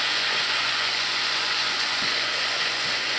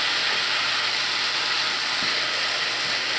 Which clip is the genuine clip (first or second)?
second